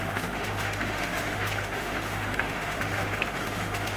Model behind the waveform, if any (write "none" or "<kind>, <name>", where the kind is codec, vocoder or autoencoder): autoencoder, DAC-VAE